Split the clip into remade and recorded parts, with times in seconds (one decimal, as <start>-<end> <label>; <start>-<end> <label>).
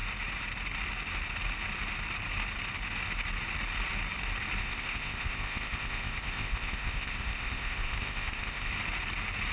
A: 0.0-4.6 recorded; 4.6-8.7 remade; 8.7-9.5 recorded